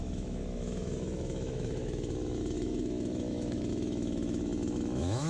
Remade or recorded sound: remade